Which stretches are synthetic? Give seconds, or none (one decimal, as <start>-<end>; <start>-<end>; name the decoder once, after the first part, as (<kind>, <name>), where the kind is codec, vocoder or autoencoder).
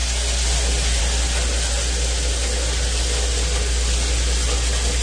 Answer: none